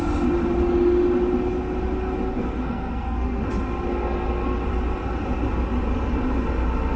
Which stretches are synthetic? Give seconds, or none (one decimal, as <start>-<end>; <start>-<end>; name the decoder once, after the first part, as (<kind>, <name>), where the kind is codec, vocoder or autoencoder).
2.3-3.4 (codec, SNAC)